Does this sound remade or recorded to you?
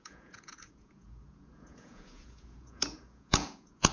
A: remade